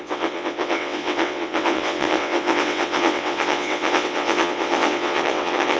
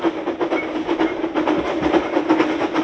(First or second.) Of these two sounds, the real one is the second